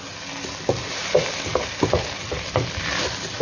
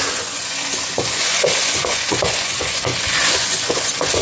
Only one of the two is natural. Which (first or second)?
first